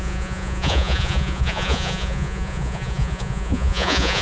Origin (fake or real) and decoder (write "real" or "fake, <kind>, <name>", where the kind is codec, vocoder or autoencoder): fake, vocoder, Vocos